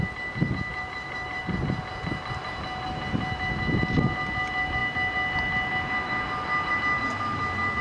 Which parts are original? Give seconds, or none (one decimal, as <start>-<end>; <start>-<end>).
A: 0.0-0.7; 1.4-7.8

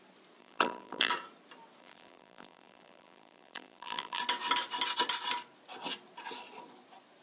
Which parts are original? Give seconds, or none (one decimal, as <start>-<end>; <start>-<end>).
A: 0.0-0.4; 1.1-1.8; 4.2-7.2